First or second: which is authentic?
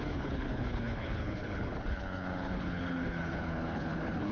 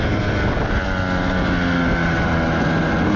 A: second